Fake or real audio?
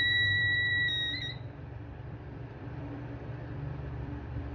fake